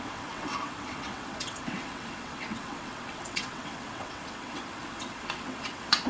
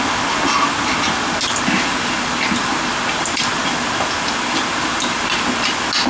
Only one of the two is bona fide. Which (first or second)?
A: second